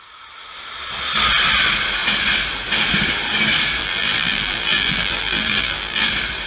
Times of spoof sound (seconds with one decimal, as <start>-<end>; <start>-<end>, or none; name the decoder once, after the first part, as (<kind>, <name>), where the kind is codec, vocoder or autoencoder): 3.8-6.1 (vocoder, BigVGAN v2)